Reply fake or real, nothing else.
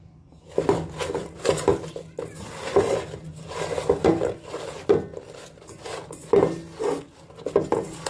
real